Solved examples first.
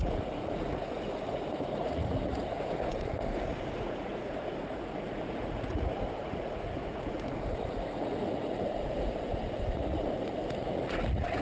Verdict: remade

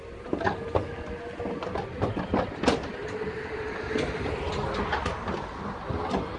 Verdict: recorded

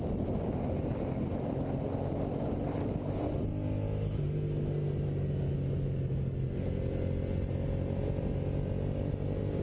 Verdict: recorded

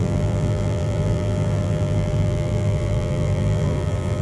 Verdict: remade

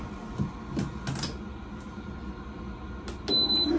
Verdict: recorded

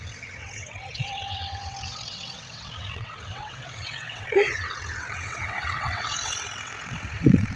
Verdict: remade